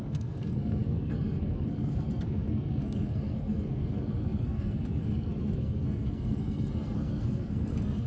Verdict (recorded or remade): remade